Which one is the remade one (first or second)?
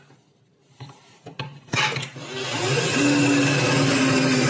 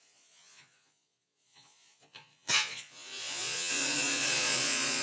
second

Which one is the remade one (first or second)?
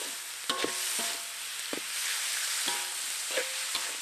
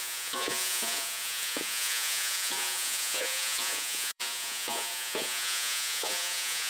second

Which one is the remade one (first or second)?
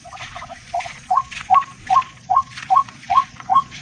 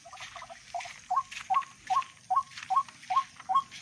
first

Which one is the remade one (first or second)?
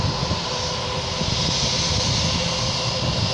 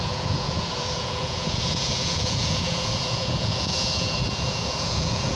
second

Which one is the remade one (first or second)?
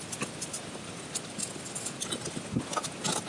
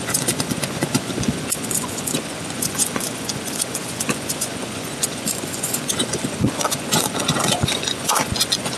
second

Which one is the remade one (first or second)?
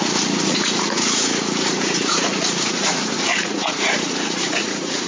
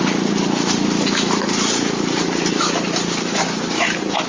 first